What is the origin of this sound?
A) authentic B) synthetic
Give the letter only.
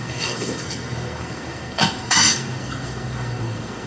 B